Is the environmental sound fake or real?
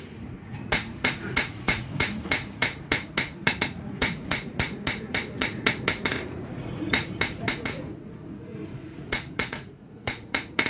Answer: fake